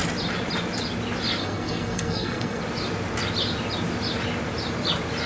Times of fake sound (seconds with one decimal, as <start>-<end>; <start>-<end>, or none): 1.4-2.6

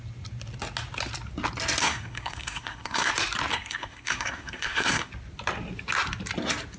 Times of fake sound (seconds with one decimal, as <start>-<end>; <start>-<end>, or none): 1.8-3.1; 3.5-5.1

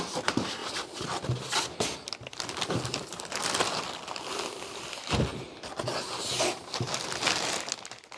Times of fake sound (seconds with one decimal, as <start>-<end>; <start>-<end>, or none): none